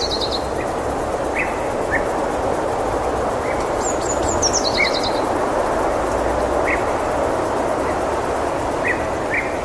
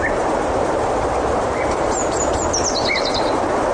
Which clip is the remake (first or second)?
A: second